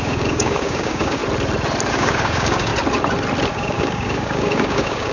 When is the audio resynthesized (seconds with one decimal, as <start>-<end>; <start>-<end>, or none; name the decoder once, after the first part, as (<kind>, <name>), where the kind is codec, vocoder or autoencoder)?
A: 0.0-1.2 (codec, DAC); 1.9-2.7; 3.5-5.1